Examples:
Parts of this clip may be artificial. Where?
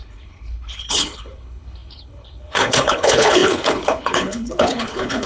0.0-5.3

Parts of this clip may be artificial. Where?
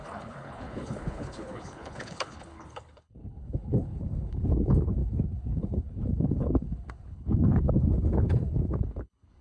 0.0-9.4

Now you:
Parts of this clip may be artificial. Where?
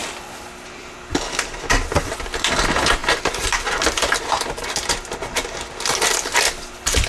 none